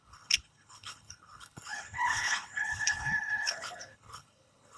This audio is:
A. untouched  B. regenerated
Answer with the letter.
B